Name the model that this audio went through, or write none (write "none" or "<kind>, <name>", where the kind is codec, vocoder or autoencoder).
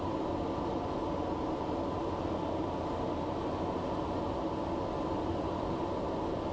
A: none